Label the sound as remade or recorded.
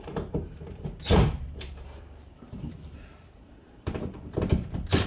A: remade